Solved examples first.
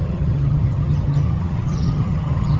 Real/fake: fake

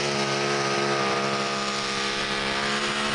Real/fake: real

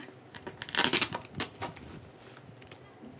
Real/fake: real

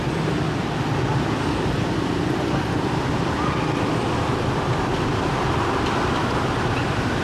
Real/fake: fake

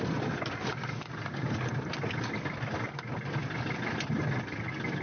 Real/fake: fake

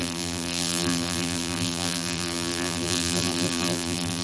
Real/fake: fake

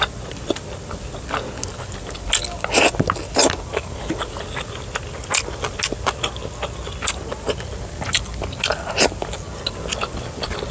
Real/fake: real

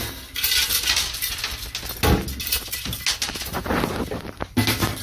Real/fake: real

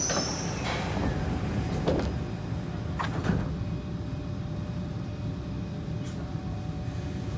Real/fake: real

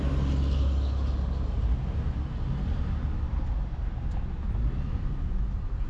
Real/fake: real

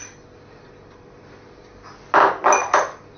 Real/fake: real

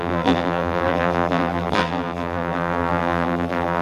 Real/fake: fake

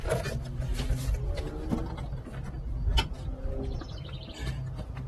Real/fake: real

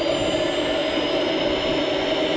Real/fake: real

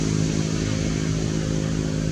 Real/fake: real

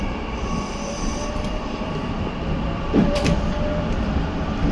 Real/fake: fake